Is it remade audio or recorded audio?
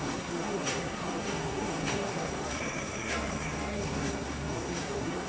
remade